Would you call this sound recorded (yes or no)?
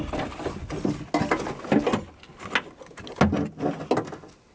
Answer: yes